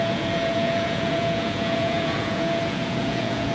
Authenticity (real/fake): fake